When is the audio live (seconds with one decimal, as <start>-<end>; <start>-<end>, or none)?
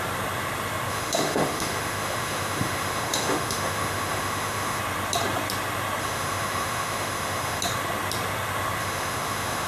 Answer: 0.0-0.9; 4.8-6.0; 7.6-8.8